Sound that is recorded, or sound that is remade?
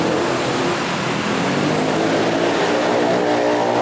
recorded